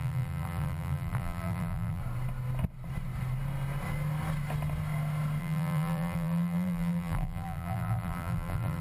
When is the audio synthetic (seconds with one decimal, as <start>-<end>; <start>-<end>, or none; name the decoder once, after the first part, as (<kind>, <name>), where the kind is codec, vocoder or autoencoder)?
0.0-2.0 (vocoder, BigVGAN v2); 5.4-8.8